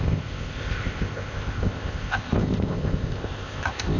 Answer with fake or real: fake